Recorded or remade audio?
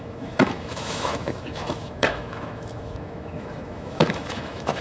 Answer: remade